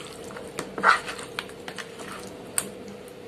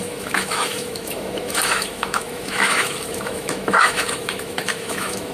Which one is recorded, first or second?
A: first